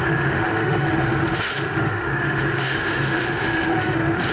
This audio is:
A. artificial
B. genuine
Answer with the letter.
A